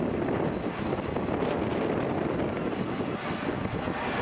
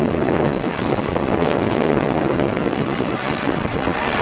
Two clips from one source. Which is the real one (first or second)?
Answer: first